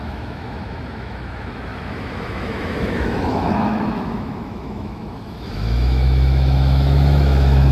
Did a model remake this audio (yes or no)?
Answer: yes